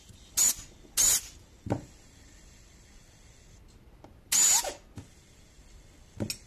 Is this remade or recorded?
recorded